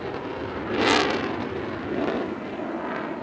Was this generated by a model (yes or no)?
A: no